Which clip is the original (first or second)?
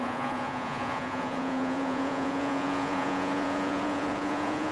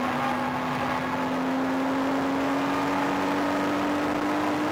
second